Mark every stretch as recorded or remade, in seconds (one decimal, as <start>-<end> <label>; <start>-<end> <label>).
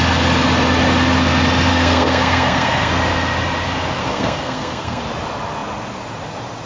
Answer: 0.0-1.7 recorded; 1.7-2.9 remade; 2.9-4.0 recorded; 4.0-5.0 remade; 5.0-6.7 recorded